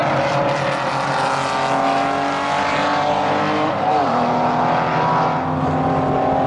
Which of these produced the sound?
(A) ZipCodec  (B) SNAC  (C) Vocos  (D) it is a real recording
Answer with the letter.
D